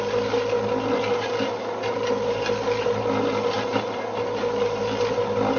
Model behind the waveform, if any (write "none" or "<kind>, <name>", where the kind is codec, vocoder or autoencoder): none